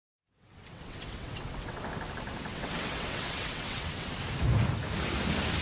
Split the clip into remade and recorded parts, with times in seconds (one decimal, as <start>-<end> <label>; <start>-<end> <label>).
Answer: 0.0-1.8 remade; 1.8-2.5 recorded; 2.5-4.1 remade; 4.1-5.6 recorded